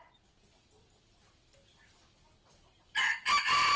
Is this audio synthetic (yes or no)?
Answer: no